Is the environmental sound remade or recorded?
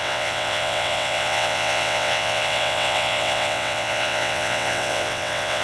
remade